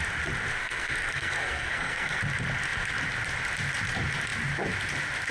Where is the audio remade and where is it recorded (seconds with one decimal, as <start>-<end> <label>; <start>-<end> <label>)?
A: 0.0-0.6 recorded; 0.6-2.2 remade; 2.2-5.3 recorded